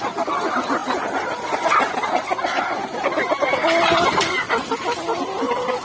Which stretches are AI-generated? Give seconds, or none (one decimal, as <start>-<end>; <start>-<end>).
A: none